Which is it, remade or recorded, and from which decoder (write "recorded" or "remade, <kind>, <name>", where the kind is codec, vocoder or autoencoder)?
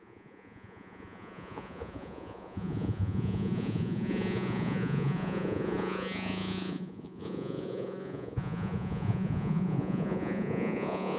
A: remade, vocoder, Vocos